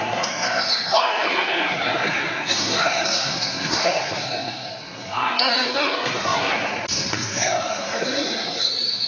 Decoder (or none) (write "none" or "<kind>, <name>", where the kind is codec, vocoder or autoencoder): codec, SNAC